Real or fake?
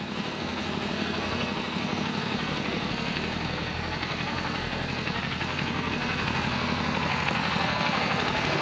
fake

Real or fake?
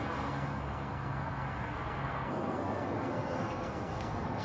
fake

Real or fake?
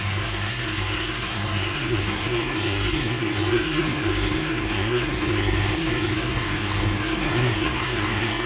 fake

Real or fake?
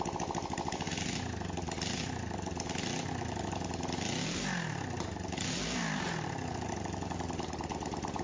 real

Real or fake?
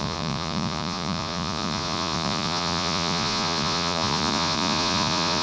fake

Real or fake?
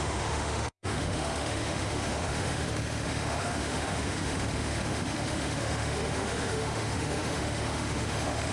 fake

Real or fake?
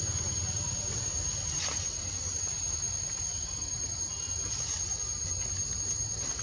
real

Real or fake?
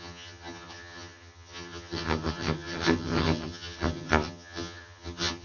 fake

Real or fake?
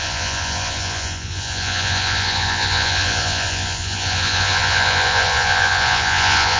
fake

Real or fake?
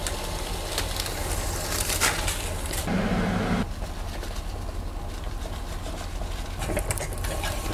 real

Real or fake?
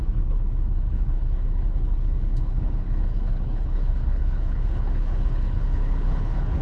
fake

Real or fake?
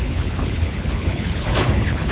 fake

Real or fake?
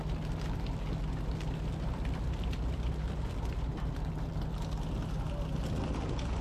real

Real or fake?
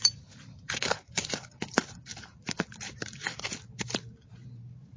fake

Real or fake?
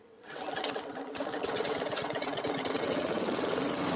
fake